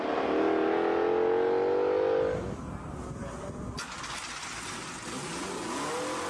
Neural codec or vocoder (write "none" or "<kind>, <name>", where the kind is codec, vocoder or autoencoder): none